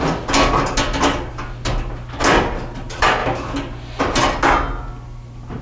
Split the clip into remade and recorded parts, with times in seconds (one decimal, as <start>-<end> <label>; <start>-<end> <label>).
0.0-5.6 recorded